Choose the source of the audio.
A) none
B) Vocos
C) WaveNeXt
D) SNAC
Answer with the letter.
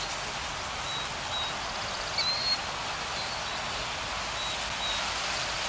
A